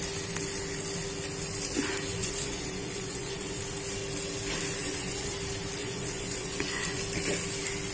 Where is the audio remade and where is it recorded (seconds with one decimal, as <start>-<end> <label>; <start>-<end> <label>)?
0.0-2.2 recorded; 2.2-3.6 remade; 3.6-4.8 recorded; 4.8-5.3 remade; 5.3-5.8 recorded; 5.8-7.0 remade; 7.0-7.9 recorded